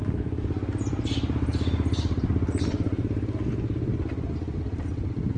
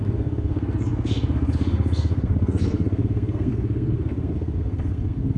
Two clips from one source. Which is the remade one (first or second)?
second